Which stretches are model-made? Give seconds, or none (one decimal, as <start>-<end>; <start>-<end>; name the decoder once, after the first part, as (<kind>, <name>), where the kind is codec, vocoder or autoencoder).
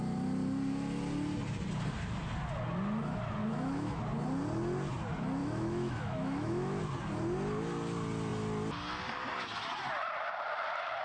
3.4-4.0 (autoencoder, DAC-VAE); 5.4-6.8